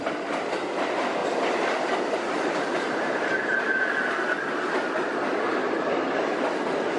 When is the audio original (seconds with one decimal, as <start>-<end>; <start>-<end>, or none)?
0.0-1.2; 3.5-5.6; 6.1-7.0